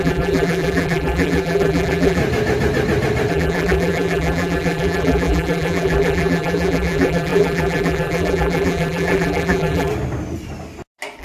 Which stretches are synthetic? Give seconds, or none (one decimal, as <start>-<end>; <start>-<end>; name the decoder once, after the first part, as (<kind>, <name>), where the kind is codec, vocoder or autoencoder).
0.0-2.2 (vocoder, BigVGAN v2); 3.3-9.9